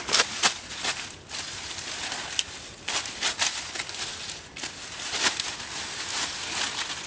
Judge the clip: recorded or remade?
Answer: recorded